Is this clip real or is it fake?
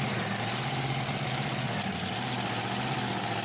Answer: real